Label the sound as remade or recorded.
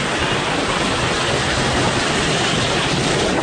recorded